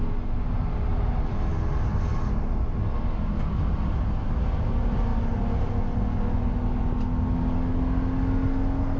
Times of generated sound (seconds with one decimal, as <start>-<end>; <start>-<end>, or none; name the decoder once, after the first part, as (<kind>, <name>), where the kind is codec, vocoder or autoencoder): none